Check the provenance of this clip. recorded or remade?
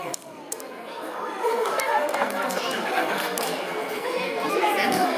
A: remade